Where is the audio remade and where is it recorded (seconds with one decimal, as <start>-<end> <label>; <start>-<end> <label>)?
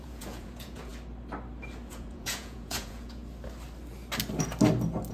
0.0-0.9 remade; 0.9-1.9 recorded; 1.9-3.2 remade; 3.2-5.1 recorded